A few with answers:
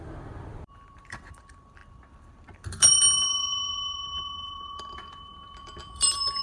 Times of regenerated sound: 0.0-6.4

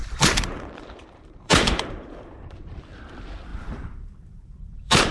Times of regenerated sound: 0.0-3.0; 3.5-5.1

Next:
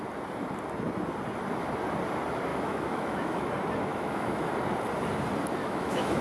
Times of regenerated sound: 2.5-3.5; 3.9-4.5; 5.6-6.2

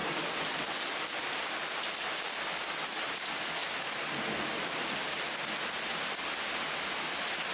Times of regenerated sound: none

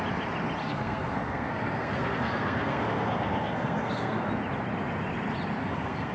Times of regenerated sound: 0.6-4.3; 5.6-6.1

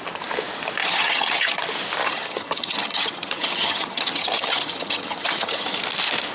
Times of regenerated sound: 0.8-1.6; 2.0-5.8